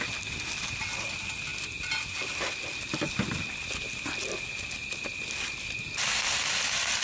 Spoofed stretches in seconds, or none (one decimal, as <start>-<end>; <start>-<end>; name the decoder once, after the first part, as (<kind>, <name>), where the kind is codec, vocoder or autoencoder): none